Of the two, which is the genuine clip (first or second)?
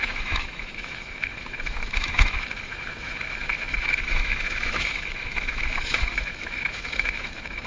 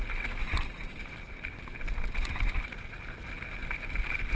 second